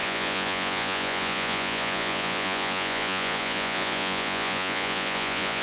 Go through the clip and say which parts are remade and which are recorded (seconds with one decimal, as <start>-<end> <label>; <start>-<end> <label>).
0.0-5.6 remade